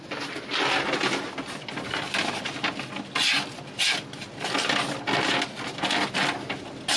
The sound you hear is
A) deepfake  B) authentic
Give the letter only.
B